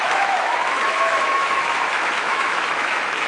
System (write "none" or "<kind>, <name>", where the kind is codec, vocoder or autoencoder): autoencoder, DAC-VAE